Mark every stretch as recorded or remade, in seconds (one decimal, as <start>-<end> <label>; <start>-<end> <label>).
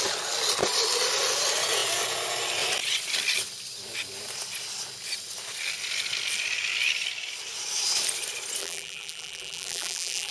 0.0-8.6 recorded; 8.6-10.3 remade